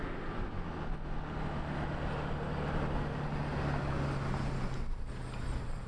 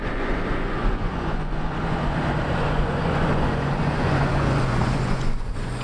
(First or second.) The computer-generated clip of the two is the second